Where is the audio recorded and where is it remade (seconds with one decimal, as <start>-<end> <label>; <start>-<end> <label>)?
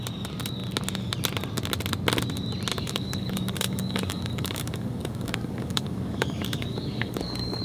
0.0-2.7 recorded; 2.7-7.6 remade